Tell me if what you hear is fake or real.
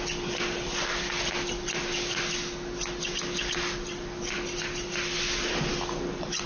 real